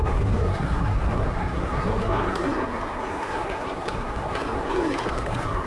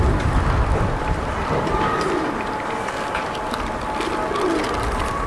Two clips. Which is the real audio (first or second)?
second